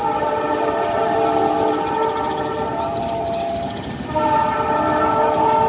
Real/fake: fake